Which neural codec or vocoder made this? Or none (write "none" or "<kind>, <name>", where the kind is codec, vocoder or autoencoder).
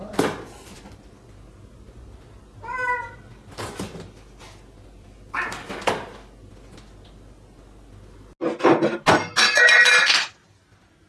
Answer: none